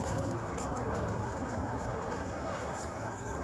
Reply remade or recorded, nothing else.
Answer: remade